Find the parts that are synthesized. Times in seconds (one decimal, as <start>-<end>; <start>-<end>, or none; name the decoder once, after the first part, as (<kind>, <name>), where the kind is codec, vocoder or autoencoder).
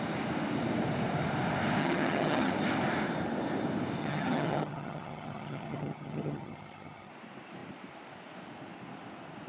1.8-2.5 (vocoder, HiFi-GAN); 4.0-7.1